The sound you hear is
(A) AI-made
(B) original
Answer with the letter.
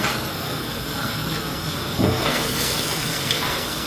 A